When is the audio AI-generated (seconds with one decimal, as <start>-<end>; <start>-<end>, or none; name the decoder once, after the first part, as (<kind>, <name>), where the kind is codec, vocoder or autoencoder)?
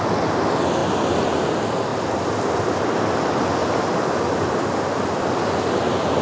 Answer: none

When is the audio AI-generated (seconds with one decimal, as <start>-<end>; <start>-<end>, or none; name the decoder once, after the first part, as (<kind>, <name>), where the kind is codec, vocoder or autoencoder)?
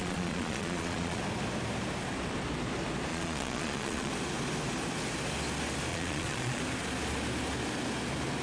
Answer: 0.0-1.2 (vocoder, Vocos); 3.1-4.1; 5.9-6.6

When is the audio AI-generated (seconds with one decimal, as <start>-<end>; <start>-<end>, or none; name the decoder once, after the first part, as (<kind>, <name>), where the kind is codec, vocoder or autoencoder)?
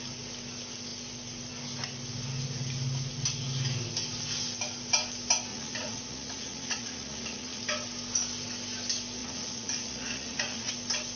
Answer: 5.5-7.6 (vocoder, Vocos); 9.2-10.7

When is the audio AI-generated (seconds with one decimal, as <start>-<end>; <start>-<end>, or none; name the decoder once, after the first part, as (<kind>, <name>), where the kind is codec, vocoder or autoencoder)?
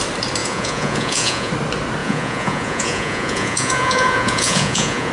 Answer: 0.4-1.5 (vocoder, Vocos); 2.0-5.1